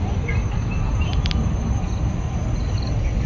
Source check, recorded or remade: recorded